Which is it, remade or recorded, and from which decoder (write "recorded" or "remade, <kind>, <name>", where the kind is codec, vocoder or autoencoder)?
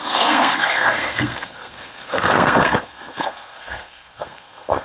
remade, codec, SNAC